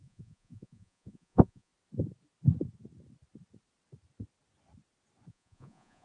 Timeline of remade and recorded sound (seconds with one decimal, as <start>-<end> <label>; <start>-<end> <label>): 0.0-1.7 remade; 1.7-5.3 recorded; 5.3-6.0 remade